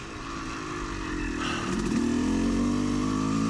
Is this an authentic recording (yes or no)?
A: yes